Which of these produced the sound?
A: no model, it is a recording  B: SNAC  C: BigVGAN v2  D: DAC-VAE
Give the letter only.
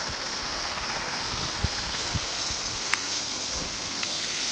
B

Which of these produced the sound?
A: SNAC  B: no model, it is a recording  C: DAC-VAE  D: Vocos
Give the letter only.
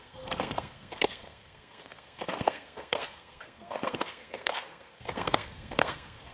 A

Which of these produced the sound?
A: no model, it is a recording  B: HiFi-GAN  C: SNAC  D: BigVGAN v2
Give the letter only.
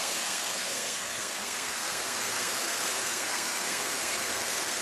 C